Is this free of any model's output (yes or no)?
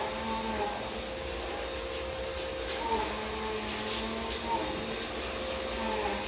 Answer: yes